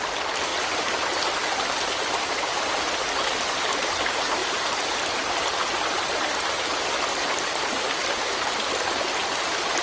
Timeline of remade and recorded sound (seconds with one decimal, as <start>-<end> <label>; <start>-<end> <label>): 0.0-4.4 recorded; 4.4-5.0 remade; 5.0-7.1 recorded; 7.1-7.8 remade; 7.8-9.8 recorded